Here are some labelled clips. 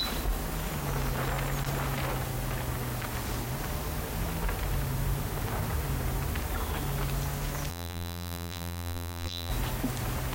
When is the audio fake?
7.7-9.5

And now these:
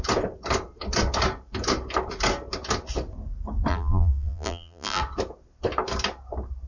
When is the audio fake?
3.7-5.0

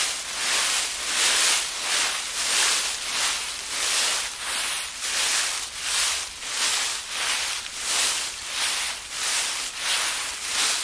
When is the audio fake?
5.3-8.0